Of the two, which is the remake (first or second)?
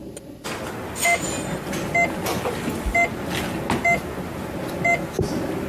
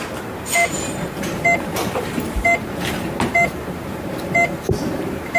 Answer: second